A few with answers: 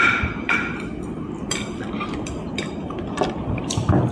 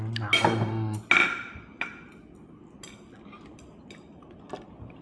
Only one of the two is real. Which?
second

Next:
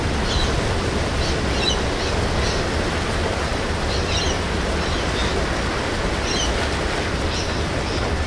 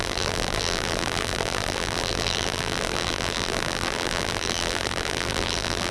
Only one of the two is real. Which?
first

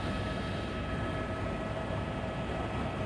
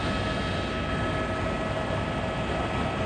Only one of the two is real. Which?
second